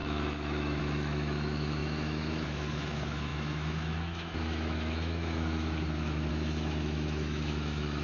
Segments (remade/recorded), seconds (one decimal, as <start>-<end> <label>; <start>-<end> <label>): 0.0-8.0 remade